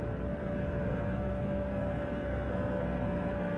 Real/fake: fake